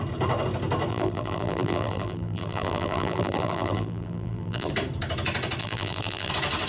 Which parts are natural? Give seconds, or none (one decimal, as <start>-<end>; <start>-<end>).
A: 0.0-0.9; 4.7-5.6; 6.3-6.7

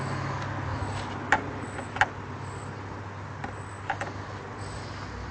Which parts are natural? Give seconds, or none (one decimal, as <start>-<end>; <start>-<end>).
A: 0.0-5.3

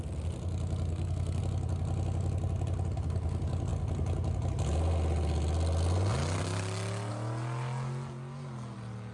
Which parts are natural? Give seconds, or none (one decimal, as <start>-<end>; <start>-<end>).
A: 0.0-0.9; 1.4-9.1

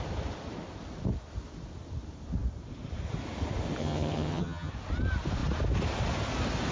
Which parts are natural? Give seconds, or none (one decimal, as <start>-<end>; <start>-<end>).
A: 0.0-3.8; 4.7-6.7

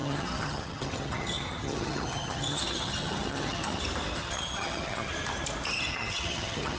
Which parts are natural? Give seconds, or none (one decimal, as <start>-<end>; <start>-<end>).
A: 3.8-4.2; 5.1-5.9

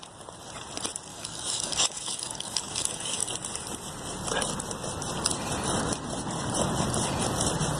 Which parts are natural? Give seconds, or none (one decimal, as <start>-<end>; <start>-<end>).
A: 0.0-1.1; 3.3-7.8